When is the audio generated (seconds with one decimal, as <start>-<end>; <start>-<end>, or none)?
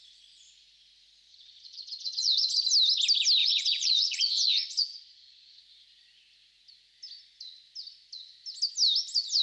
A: 1.3-2.6; 3.4-5.6